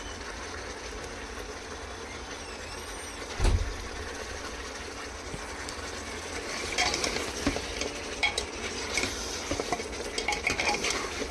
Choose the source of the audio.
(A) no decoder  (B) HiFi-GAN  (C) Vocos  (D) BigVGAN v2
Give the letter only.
A